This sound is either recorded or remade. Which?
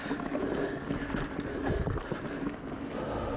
recorded